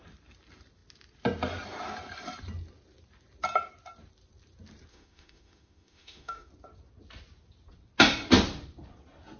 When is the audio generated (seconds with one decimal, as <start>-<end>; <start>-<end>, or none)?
4.9-6.5